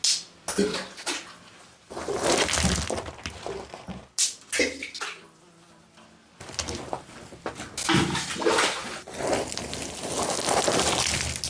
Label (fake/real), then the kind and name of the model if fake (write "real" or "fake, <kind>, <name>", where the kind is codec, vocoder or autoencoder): real